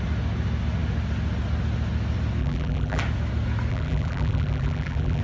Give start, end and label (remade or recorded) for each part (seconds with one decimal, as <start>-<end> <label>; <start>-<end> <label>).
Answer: 0.0-2.4 recorded; 2.4-3.0 remade; 3.0-3.7 recorded; 3.7-5.2 remade